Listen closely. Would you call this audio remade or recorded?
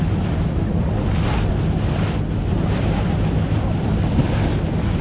recorded